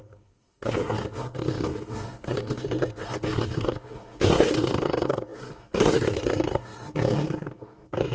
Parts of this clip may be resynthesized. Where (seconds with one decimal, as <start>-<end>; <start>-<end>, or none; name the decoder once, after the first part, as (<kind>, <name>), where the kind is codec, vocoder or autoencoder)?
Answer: 0.0-8.1 (codec, SNAC)